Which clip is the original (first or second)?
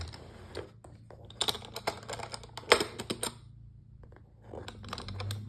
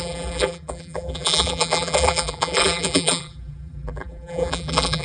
first